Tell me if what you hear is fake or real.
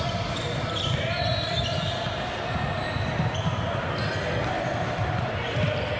real